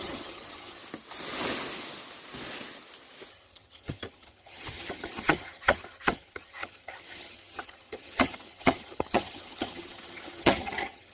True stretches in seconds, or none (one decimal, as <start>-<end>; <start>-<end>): 0.8-3.3

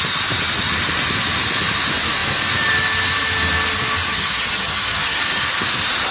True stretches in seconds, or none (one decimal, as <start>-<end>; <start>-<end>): 0.0-4.1; 5.2-6.1

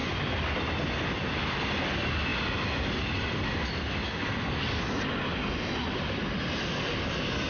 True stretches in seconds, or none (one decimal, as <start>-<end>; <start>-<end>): 0.0-7.5

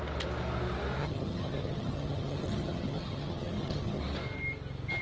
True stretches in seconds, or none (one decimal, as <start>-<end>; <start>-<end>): 0.0-1.0; 4.0-5.0

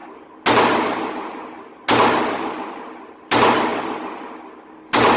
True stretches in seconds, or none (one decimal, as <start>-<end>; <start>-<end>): 0.0-5.2

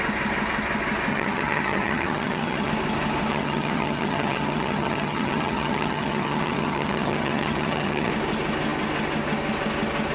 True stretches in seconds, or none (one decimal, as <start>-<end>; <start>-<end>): 0.0-1.1; 2.7-3.3; 8.1-10.1

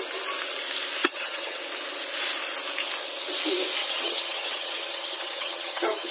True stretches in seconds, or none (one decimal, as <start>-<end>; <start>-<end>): 0.0-1.0; 1.6-3.8

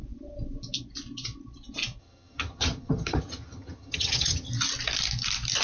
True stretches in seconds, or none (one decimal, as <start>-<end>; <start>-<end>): 0.0-2.0; 4.5-5.6